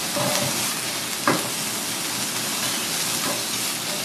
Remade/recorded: recorded